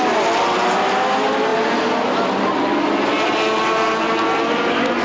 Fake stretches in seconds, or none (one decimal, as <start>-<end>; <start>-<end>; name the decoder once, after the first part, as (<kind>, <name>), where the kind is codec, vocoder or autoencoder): none